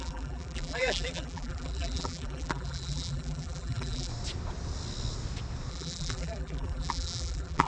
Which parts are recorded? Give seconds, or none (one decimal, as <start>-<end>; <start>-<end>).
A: 4.1-5.7